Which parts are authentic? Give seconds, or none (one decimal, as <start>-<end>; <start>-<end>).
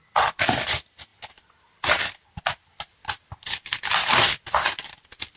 0.0-5.4